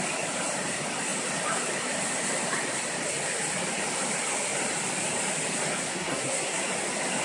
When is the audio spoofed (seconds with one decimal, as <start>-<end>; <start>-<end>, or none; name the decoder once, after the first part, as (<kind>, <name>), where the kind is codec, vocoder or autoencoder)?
5.9-6.6 (codec, SNAC)